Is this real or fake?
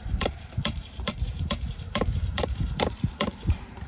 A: fake